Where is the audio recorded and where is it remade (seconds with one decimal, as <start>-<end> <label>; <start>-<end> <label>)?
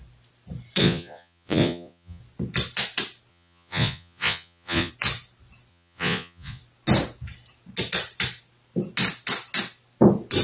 0.0-0.8 recorded; 0.8-2.2 remade; 2.2-3.3 recorded; 3.3-4.9 remade; 4.9-5.7 recorded; 5.7-6.6 remade; 6.6-10.4 recorded